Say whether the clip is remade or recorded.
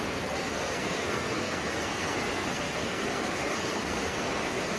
remade